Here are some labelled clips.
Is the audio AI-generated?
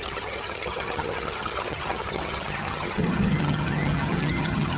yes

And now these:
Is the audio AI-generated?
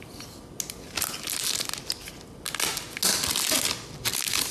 no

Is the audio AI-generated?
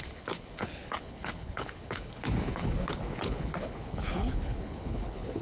yes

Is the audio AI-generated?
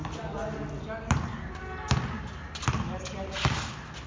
no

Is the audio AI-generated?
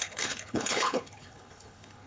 yes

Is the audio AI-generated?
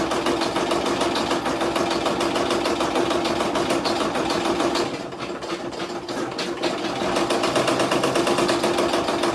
no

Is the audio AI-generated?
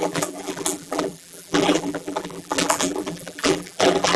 yes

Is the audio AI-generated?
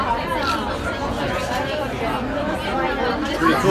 no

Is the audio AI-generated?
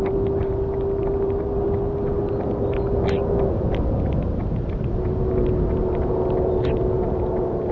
no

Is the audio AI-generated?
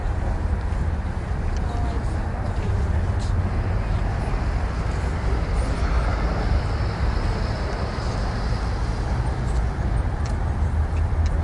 no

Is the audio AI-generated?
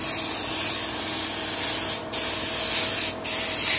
no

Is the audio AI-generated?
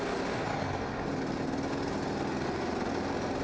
no